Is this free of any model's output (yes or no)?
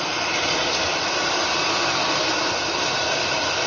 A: yes